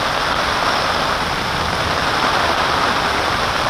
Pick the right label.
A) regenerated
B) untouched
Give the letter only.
B